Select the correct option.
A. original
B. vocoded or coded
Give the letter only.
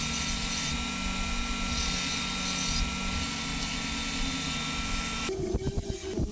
A